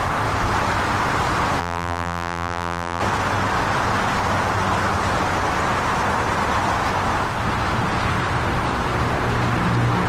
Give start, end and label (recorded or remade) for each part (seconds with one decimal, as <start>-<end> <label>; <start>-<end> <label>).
0.0-1.6 recorded; 1.6-3.0 remade; 3.0-10.1 recorded